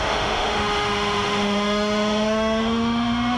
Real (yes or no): no